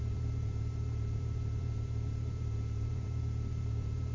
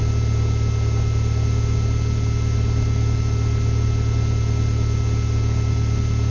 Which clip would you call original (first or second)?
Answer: second